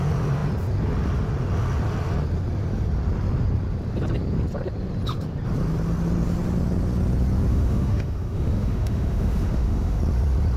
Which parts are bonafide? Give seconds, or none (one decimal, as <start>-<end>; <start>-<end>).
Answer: 0.0-7.5; 10.0-10.6